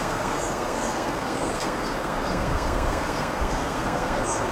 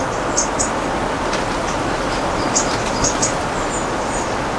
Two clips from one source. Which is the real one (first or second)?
second